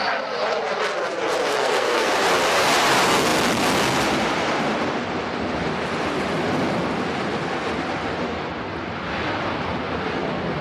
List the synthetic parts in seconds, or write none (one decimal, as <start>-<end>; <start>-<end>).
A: 1.5-2.1

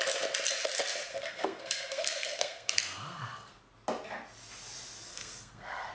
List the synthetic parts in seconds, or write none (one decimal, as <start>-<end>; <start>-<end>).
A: 1.1-3.6; 5.1-5.9

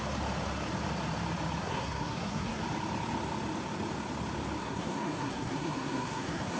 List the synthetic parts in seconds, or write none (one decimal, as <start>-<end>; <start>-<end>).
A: 1.6-2.6; 4.6-6.6

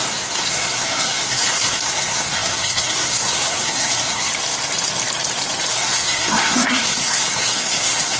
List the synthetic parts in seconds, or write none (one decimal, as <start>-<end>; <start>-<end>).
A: 0.0-4.3; 5.7-8.2

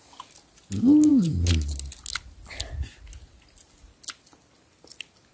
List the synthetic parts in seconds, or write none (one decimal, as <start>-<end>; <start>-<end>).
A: none